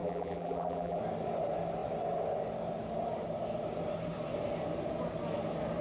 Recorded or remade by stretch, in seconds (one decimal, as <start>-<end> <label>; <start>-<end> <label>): 0.0-1.0 remade; 1.0-5.8 recorded